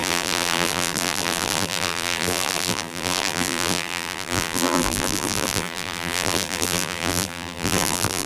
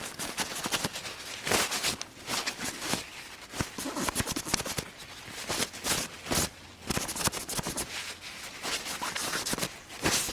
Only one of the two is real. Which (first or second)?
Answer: second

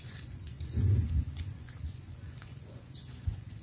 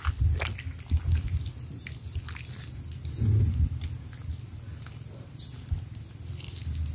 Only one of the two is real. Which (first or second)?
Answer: second